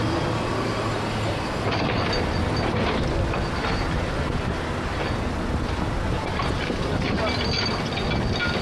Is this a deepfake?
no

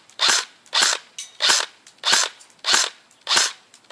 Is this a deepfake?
no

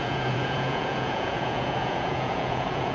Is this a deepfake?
yes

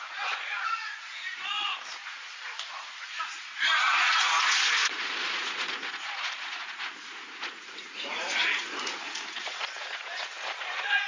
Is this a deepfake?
yes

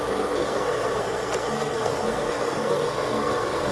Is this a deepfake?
yes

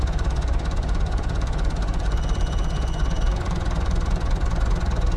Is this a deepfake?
yes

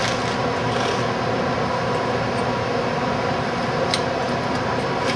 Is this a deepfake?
no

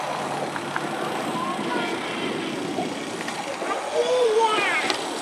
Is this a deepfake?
no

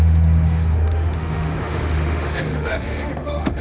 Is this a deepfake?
yes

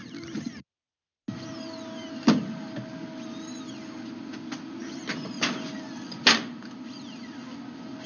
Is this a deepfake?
no